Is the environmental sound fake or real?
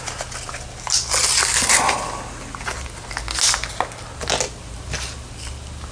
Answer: real